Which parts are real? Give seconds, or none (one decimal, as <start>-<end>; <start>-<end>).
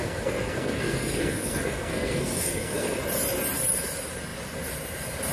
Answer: 3.0-5.3